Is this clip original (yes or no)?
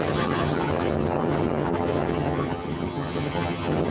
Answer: no